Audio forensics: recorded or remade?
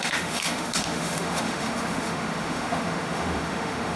remade